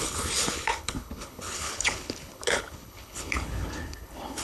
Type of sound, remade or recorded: remade